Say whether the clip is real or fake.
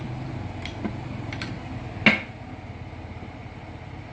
real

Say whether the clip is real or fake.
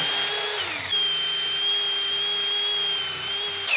real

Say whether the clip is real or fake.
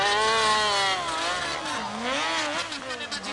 real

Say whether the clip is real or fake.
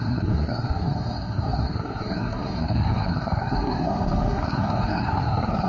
fake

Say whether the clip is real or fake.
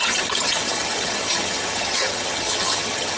fake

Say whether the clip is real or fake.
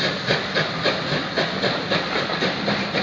real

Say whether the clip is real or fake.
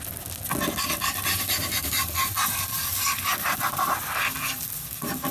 real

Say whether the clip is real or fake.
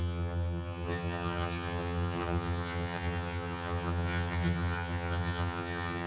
fake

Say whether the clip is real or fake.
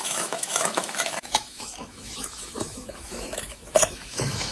fake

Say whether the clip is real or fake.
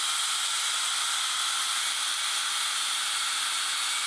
real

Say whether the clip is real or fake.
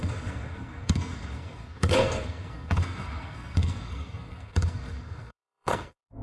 fake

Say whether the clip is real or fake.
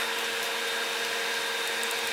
real